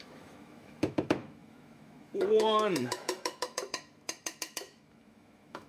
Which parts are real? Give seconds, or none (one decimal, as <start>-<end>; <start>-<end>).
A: none